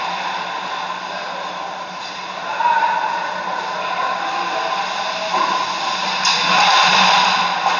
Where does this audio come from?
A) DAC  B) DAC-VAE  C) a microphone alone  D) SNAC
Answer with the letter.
C